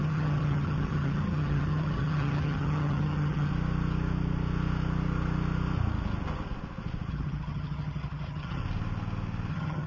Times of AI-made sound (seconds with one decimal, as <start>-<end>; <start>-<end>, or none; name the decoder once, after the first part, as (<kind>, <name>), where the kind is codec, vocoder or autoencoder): 0.0-3.5 (vocoder, HiFi-GAN); 7.1-8.6; 9.5-9.9

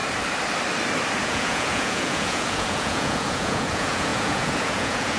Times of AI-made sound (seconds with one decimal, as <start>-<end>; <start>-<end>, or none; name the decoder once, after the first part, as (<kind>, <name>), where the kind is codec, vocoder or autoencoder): 1.2-5.2 (vocoder, Vocos)

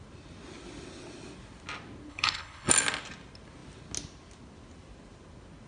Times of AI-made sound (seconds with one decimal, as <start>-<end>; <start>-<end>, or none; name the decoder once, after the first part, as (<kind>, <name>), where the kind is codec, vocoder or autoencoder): 2.1-2.7 (codec, HILCodec)

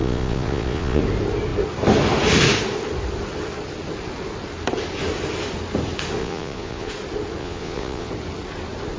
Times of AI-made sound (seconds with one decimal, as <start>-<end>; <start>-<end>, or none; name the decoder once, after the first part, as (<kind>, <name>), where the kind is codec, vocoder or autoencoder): 0.0-1.0 (vocoder, Vocos); 6.2-6.9; 7.4-8.1

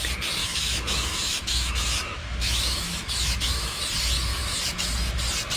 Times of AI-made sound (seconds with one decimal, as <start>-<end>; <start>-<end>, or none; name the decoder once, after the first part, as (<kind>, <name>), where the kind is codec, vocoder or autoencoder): 0.4-3.8 (autoencoder, DAC-VAE); 4.4-4.9

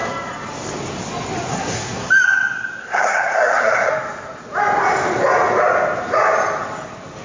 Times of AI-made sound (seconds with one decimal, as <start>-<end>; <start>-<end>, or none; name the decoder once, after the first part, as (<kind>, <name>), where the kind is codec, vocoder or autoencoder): 1.5-2.1 (codec, SNAC); 2.8-3.9

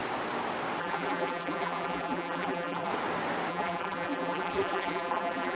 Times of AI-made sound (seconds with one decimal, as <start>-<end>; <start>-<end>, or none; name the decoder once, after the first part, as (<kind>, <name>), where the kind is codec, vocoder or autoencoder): 0.8-2.9 (vocoder, BigVGAN v2); 3.5-5.5

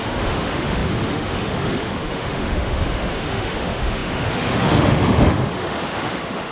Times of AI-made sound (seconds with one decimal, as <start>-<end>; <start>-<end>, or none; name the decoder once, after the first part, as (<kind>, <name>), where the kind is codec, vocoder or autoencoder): 0.0-6.5 (autoencoder, DAC-VAE)